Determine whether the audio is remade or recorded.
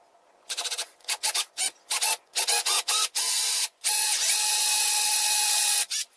remade